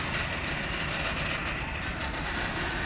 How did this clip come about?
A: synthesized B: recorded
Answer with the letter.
B